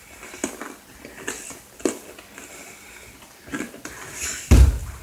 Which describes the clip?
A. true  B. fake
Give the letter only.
A